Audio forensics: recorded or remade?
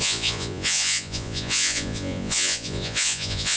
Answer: remade